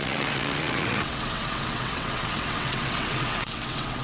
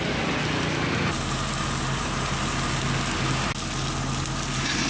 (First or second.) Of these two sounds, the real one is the second